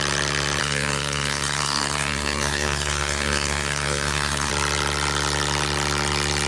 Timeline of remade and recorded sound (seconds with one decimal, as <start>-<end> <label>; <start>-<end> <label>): 0.0-0.6 recorded; 0.6-4.5 remade; 4.5-6.5 recorded